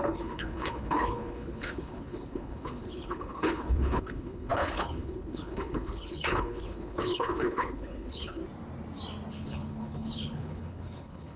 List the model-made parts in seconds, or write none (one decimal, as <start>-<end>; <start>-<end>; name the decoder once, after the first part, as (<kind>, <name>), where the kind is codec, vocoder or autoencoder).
0.0-8.4 (codec, HILCodec); 9.3-11.4